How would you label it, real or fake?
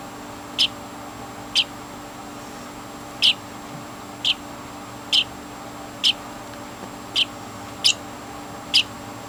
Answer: real